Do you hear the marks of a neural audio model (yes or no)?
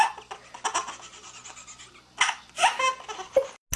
no